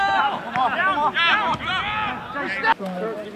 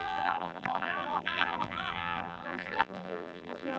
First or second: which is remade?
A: second